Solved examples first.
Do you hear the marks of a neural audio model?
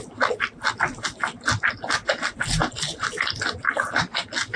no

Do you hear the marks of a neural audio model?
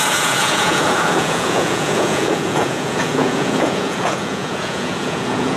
yes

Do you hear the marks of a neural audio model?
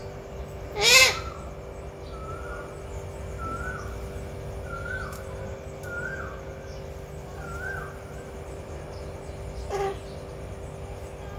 no